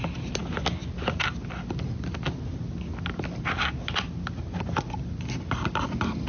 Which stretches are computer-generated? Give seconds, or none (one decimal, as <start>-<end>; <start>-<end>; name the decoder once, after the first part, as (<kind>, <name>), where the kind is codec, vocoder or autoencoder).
none